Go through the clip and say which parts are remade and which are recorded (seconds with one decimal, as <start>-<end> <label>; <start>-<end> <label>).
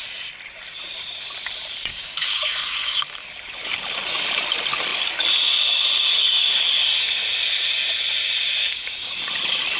0.0-1.9 recorded; 1.9-3.0 remade; 3.0-8.6 recorded; 8.6-9.2 remade; 9.2-9.8 recorded